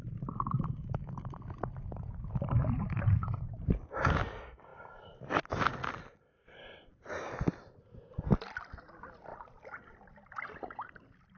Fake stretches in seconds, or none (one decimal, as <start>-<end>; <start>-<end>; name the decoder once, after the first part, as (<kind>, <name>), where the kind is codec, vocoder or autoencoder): 4.7-6.9 (vocoder, BigVGAN v2); 9.3-10.9